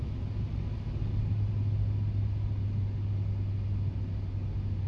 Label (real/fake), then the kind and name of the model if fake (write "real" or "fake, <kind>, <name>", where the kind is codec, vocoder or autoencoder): real